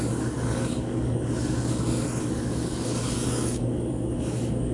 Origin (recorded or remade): remade